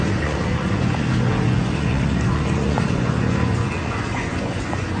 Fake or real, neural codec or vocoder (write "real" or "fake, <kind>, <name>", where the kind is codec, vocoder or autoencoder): fake, vocoder, Vocos